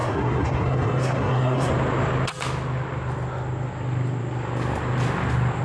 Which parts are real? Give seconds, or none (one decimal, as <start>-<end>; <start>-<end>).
1.7-5.6